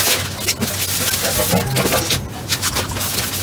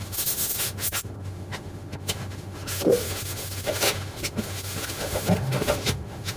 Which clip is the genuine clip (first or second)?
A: first